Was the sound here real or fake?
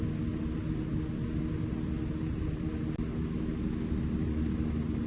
real